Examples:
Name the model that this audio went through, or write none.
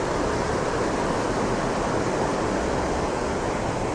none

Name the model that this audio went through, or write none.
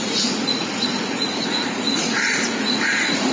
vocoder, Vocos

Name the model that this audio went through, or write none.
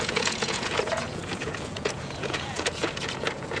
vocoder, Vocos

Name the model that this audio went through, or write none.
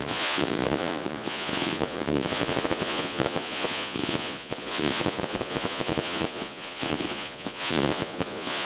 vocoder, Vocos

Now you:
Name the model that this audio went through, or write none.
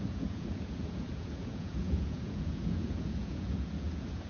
vocoder, Vocos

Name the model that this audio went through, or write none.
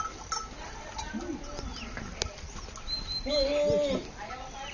none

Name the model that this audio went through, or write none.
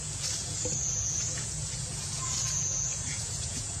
vocoder, Vocos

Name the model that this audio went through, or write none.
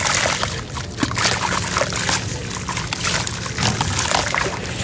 none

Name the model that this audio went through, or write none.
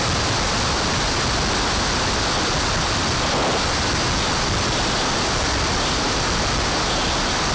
none